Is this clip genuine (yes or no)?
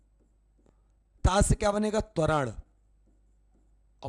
yes